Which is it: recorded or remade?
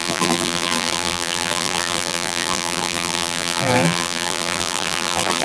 remade